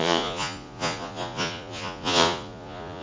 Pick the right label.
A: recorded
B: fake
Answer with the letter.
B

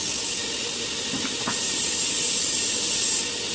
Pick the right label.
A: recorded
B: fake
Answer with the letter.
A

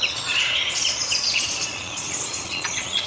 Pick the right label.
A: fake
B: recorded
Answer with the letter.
A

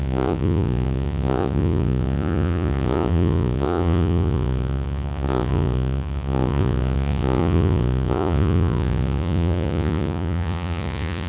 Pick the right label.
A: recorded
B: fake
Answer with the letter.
B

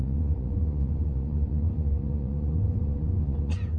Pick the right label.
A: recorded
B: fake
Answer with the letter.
B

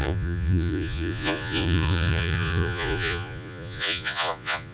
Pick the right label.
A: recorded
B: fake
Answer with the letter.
B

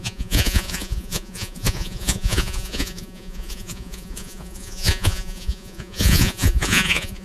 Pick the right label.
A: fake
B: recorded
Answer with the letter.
A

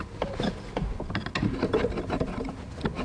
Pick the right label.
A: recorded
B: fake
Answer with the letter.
A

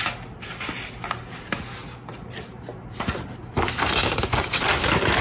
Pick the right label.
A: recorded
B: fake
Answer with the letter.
A